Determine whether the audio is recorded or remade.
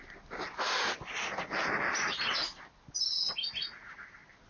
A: recorded